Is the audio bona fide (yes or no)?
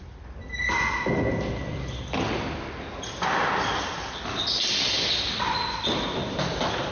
yes